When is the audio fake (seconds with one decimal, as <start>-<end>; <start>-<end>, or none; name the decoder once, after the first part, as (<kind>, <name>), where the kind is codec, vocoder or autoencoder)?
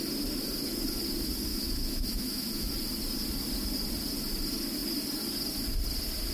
1.5-2.7 (autoencoder, DAC-VAE)